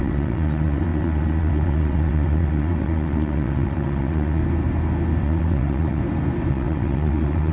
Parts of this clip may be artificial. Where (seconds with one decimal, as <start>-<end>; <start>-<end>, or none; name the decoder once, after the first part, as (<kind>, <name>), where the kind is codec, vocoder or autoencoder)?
0.0-4.4 (vocoder, WaveNeXt); 5.2-6.0; 6.5-7.5